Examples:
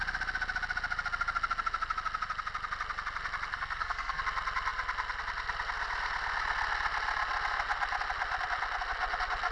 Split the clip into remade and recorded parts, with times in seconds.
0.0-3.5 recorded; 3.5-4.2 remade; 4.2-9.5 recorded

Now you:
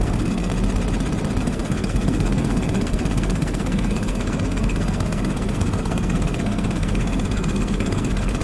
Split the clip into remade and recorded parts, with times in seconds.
0.0-0.5 remade; 0.5-1.4 recorded; 1.4-8.4 remade

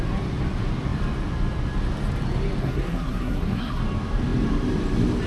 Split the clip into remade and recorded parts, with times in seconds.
0.0-2.6 recorded; 2.6-3.8 remade; 3.8-5.3 recorded

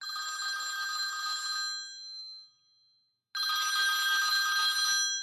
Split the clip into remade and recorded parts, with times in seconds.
0.0-5.2 recorded

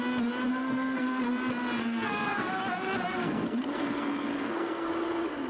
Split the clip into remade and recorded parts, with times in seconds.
0.0-0.5 recorded; 0.5-1.2 remade; 1.2-1.8 recorded; 1.8-2.5 remade; 2.5-3.1 recorded; 3.1-4.9 remade; 4.9-5.5 recorded